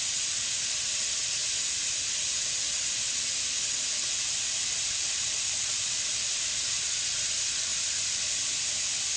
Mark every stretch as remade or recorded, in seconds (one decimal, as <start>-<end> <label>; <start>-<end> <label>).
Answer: 0.0-1.4 remade; 1.4-4.8 recorded; 4.8-7.7 remade; 7.7-9.2 recorded